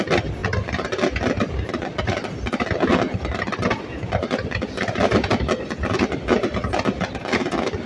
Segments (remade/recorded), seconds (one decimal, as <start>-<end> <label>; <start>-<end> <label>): 0.0-7.9 recorded

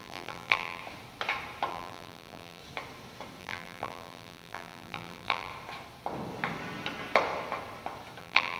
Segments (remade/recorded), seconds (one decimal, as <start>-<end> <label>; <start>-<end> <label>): 0.0-0.8 remade; 0.8-1.7 recorded; 1.7-2.6 remade; 2.6-3.4 recorded; 3.4-5.5 remade; 5.5-8.2 recorded; 8.2-8.6 remade

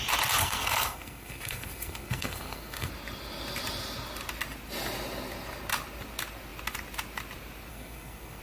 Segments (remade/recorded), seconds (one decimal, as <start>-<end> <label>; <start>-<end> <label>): 0.0-0.4 recorded; 0.4-2.9 remade; 2.9-7.7 recorded; 7.7-8.4 remade